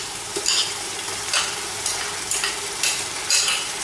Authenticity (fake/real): fake